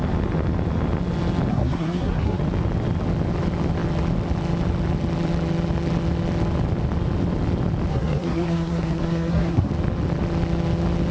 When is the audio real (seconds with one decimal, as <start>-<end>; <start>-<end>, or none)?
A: 0.0-1.5; 2.4-7.9; 9.7-11.1